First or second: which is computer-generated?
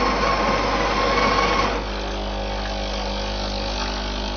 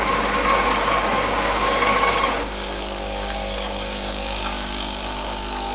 second